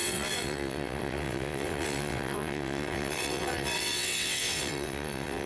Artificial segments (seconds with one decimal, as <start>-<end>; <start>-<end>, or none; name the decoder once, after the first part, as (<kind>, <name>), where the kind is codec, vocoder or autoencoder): 0.0-5.5 (vocoder, WaveNeXt)